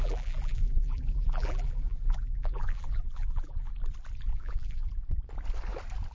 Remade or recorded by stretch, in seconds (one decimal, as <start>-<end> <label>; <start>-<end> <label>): 0.0-3.7 remade; 3.7-4.3 recorded; 4.3-4.9 remade; 4.9-6.1 recorded